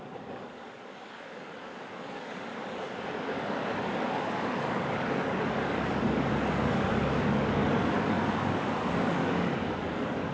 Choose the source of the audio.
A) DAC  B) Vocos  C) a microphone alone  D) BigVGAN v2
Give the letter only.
A